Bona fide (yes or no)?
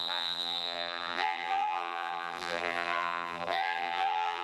no